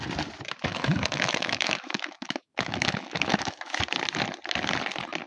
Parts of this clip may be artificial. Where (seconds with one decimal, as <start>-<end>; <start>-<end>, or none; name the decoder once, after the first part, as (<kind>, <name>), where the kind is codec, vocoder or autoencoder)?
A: 0.7-3.8 (autoencoder, DAC-VAE)